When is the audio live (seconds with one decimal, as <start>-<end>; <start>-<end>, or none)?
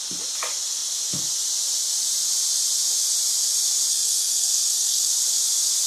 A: 0.0-3.9; 5.1-5.9